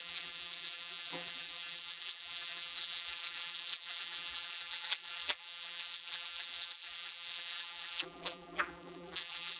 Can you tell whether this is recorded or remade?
remade